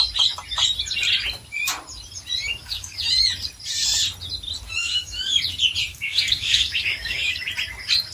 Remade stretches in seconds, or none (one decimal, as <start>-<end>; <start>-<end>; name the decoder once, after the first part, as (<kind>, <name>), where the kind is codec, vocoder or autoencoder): 2.5-3.0 (codec, DAC); 4.8-5.4; 5.9-7.5